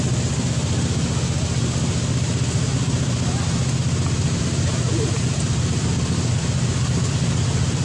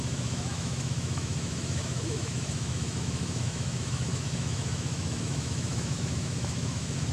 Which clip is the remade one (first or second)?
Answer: second